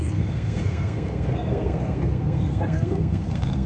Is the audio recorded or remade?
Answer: remade